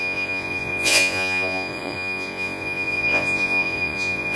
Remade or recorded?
remade